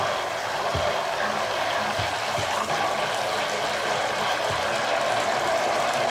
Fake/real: real